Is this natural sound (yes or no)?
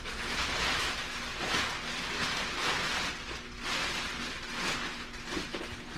yes